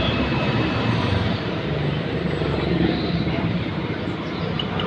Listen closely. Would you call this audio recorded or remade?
remade